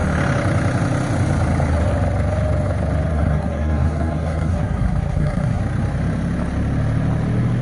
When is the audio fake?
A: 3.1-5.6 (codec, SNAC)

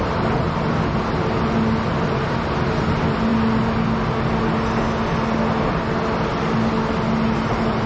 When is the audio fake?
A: none

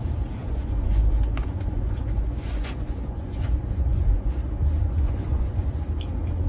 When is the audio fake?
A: 0.4-4.3 (vocoder, Vocos); 4.8-5.8

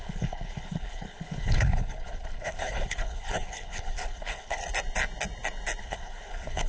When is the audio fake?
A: 0.0-4.6 (codec, HILCodec); 5.8-6.7

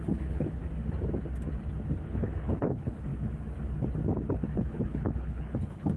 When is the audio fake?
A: 0.0-0.6 (codec, HILCodec); 1.9-3.1; 4.3-6.0